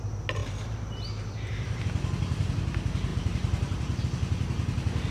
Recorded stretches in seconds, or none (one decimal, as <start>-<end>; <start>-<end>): 0.0-0.4; 1.8-3.1; 4.0-5.1